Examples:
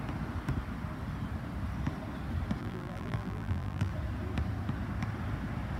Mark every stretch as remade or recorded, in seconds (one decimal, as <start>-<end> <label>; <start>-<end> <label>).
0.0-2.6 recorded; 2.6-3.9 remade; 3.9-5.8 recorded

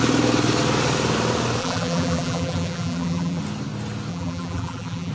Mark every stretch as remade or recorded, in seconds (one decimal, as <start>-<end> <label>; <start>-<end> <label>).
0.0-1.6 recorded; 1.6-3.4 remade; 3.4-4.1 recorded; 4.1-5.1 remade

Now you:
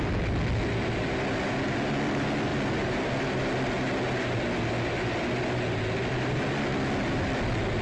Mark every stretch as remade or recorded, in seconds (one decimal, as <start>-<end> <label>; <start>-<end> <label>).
0.0-7.8 recorded

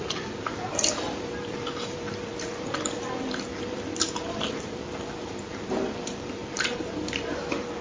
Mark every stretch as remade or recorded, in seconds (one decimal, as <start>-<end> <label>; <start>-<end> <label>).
0.0-3.5 remade; 3.5-4.1 recorded; 4.1-7.8 remade